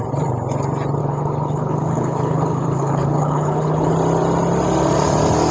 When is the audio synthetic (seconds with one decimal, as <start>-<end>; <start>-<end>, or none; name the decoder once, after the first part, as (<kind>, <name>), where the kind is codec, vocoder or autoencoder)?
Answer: 1.0-3.9 (codec, HILCodec)